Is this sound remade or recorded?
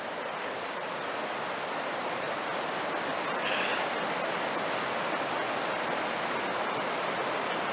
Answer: recorded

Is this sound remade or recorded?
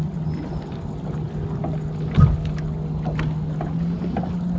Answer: recorded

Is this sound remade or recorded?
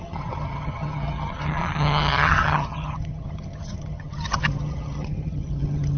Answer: remade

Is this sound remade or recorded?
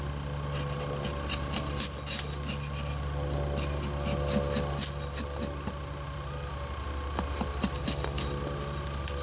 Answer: recorded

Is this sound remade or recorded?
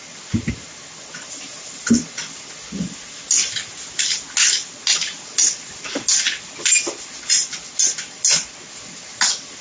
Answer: recorded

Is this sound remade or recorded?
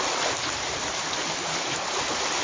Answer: recorded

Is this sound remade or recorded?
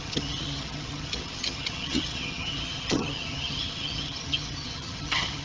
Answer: remade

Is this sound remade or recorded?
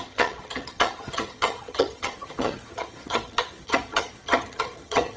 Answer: remade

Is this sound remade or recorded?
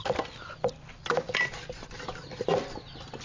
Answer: recorded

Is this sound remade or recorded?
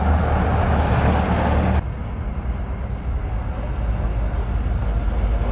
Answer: recorded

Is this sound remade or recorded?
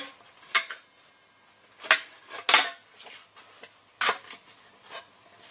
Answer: recorded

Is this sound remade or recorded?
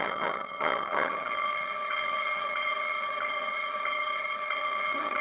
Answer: remade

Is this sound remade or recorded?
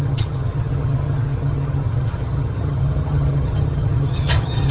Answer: remade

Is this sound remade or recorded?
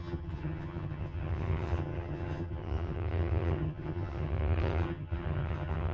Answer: remade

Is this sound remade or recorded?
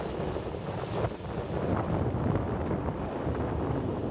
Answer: recorded